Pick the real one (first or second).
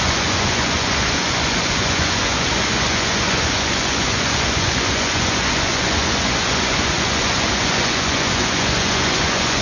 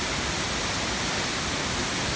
second